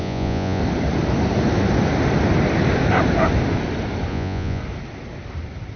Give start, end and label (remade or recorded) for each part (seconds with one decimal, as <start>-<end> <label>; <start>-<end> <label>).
0.0-0.6 remade; 0.6-4.1 recorded; 4.1-4.6 remade; 4.6-5.8 recorded